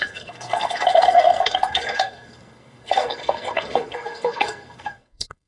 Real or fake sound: fake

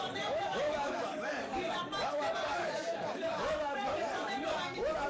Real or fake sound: fake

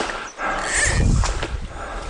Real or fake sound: real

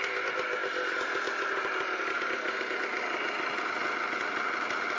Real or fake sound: real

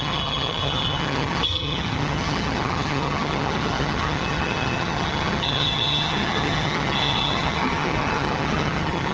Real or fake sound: fake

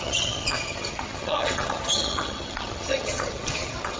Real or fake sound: fake